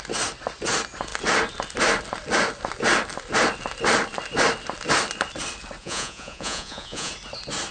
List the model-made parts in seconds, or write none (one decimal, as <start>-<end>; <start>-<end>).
5.8-7.1